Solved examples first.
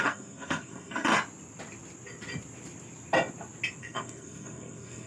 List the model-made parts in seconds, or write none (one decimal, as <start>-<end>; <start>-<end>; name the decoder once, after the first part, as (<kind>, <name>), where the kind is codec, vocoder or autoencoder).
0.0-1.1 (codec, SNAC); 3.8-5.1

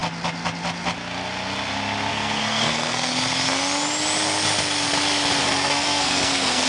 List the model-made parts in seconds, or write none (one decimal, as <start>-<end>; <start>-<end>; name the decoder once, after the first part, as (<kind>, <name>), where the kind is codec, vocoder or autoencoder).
2.1-3.1 (codec, SNAC); 5.4-6.7

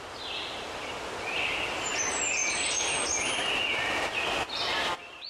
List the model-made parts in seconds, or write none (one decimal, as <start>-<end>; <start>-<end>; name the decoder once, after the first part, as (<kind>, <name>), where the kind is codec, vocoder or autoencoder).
none

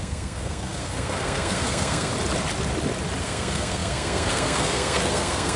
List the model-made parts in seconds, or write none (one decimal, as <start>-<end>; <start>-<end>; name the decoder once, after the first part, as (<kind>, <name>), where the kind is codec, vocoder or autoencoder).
0.0-2.1 (codec, SNAC); 3.2-5.6